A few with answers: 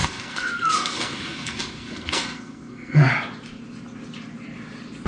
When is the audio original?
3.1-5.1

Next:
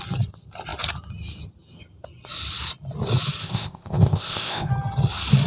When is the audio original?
0.0-3.4; 4.7-5.5

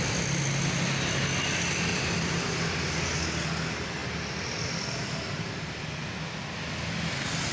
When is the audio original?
0.0-1.9; 2.6-7.5

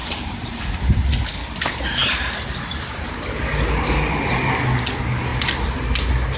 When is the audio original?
0.6-6.4

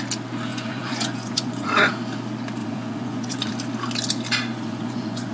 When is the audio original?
0.0-0.5; 1.9-2.6; 3.5-4.5

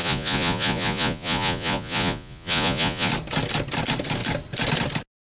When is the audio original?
3.1-5.2